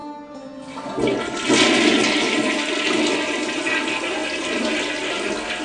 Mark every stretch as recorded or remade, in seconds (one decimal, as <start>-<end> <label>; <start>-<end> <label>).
0.0-5.6 recorded